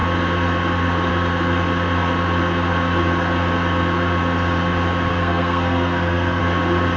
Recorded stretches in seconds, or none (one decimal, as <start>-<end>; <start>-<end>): 0.0-5.1; 6.4-7.0